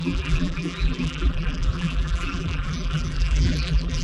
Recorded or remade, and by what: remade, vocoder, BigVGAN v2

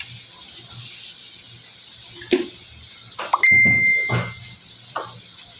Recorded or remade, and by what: recorded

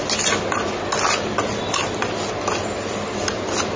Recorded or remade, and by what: recorded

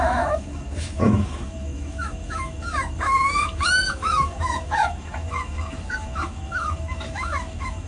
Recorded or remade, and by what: remade, autoencoder, DAC-VAE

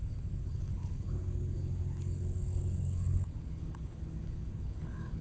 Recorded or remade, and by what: remade, codec, HILCodec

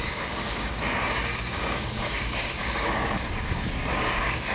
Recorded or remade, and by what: remade, codec, DAC